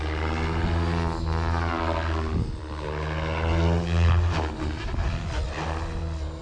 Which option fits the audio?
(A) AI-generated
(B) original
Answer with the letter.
B